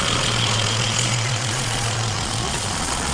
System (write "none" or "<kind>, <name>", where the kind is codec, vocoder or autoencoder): vocoder, Vocos